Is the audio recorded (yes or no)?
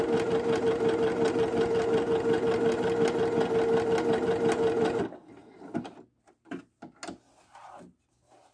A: yes